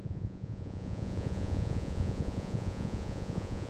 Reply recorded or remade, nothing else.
remade